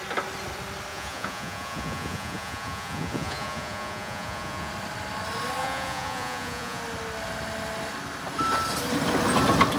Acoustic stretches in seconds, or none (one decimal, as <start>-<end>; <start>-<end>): 0.0-0.9; 4.7-5.6; 6.8-9.8